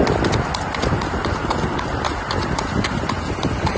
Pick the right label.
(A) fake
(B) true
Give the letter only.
B